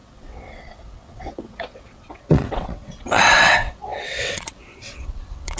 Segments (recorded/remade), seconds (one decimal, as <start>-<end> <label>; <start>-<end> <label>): 0.0-5.6 remade